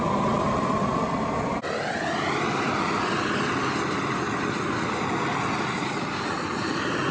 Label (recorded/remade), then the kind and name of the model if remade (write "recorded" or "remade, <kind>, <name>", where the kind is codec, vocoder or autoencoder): recorded